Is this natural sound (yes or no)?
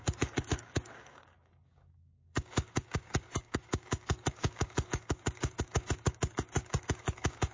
no